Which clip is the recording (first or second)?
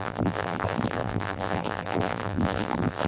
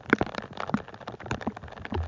second